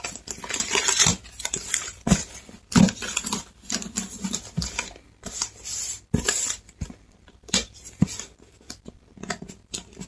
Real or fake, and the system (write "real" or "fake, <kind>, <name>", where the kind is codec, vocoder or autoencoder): fake, vocoder, BigVGAN v2